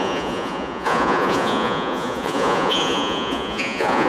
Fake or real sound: fake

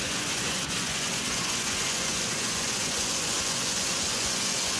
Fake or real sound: fake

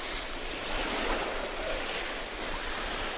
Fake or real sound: real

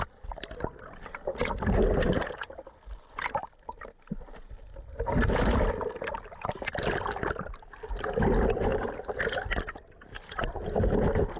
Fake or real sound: real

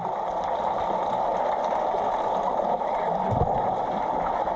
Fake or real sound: real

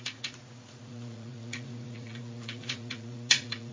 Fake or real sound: fake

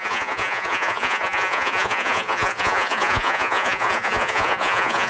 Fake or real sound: fake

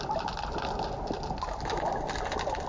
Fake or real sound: real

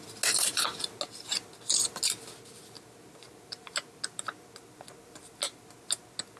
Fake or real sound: real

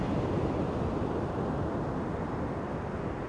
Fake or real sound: real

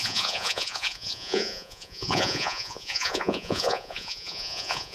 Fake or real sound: fake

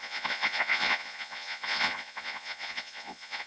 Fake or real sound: fake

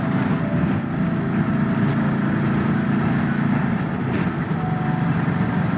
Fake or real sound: real